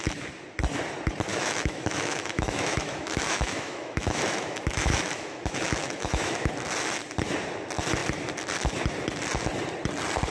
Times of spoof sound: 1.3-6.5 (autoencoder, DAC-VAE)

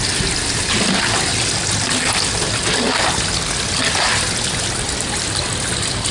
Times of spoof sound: none

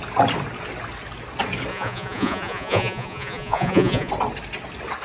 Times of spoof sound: 1.7-4.1 (vocoder, Vocos)

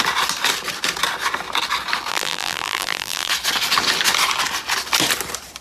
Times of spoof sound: 2.1-3.3 (vocoder, BigVGAN v2)

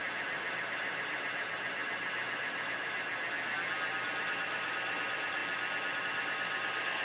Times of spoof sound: 0.0-3.1 (vocoder, BigVGAN v2); 4.2-5.4; 6.0-7.0

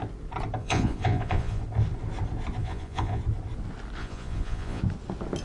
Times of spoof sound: 0.6-1.6 (vocoder, Vocos); 2.6-3.2; 4.0-4.8

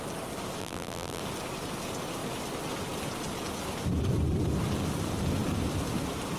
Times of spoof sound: 0.6-1.2 (vocoder, BigVGAN v2)